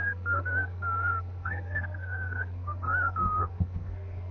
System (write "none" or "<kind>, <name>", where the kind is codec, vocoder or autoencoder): codec, SNAC